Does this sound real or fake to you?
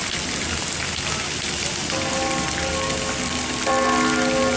real